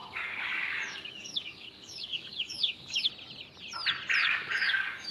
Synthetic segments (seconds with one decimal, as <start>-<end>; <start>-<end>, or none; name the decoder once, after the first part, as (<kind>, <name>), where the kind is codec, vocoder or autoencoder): 0.0-3.1 (codec, DAC); 4.2-5.1